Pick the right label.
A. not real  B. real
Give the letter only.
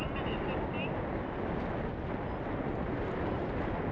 B